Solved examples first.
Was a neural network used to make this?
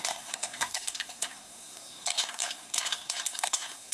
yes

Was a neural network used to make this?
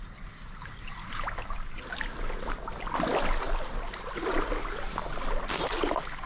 no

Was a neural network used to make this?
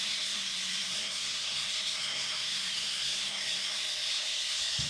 yes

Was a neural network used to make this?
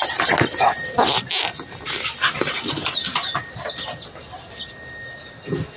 no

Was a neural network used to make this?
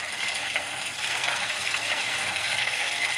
yes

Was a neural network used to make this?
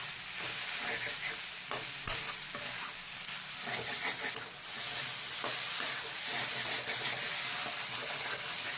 no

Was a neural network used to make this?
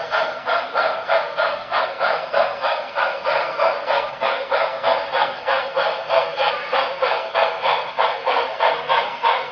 yes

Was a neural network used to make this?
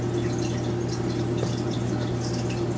no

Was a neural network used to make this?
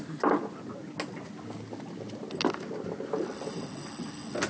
no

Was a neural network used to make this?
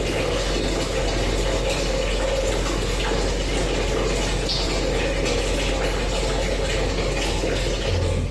no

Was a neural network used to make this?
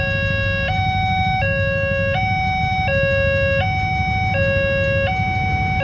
no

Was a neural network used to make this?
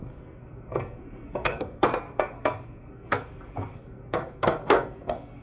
yes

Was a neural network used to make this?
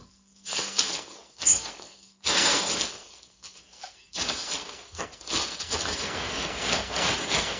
yes